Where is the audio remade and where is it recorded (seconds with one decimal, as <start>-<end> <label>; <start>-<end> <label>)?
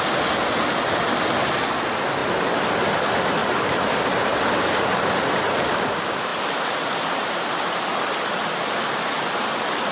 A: 0.0-9.9 recorded